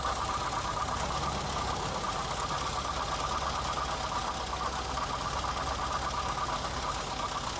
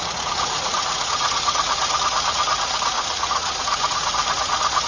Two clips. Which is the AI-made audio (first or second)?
second